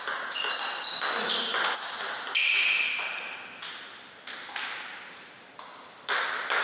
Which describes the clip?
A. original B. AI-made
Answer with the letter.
A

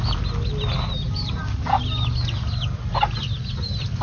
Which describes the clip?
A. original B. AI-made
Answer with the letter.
A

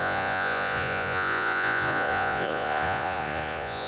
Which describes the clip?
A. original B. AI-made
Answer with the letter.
B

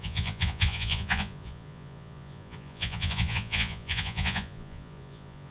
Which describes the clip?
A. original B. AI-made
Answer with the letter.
B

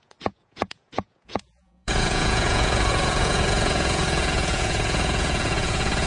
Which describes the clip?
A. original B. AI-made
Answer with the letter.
B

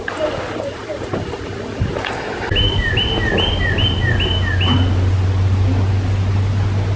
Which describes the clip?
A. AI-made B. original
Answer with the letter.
B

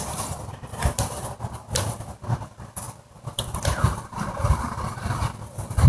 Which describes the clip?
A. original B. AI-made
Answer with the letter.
A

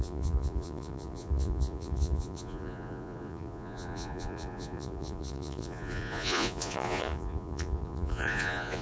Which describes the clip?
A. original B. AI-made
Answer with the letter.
B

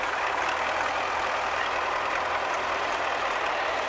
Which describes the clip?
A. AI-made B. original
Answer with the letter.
B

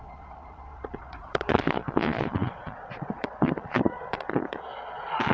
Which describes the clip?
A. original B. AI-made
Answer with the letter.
B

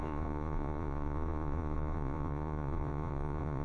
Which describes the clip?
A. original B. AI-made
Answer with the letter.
B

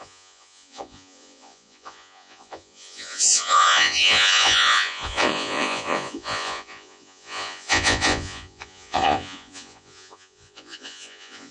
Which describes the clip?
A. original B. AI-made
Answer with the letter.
B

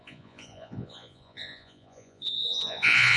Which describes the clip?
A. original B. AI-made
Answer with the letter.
B